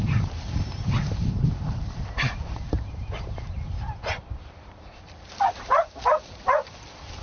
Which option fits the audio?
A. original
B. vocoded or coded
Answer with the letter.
B